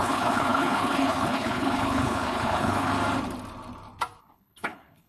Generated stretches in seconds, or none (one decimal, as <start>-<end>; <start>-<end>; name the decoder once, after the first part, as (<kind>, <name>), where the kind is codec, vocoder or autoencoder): 0.0-2.9 (codec, HILCodec); 4.2-5.1